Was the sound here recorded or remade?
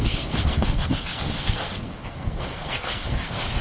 remade